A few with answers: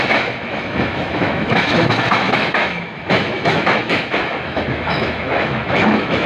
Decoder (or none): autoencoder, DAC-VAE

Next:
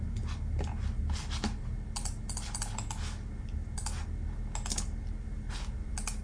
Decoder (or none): none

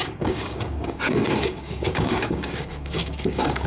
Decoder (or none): codec, DAC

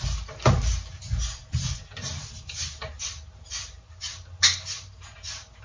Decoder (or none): none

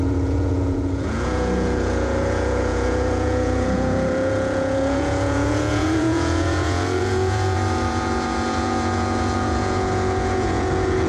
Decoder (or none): vocoder, Vocos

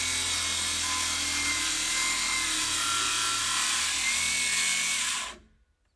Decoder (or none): none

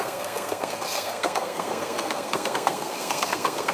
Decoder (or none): codec, SNAC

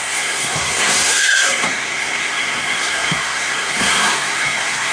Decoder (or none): codec, SNAC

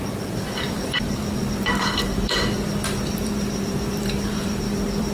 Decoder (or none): vocoder, BigVGAN v2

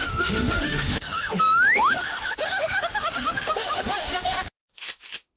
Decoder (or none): autoencoder, DAC-VAE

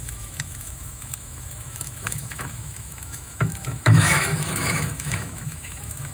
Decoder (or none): autoencoder, DAC-VAE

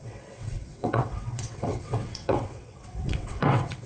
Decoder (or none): vocoder, WaveNeXt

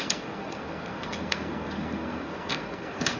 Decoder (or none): codec, SNAC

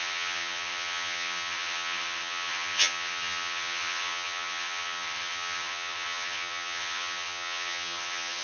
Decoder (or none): vocoder, HiFi-GAN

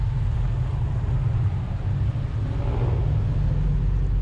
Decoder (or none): none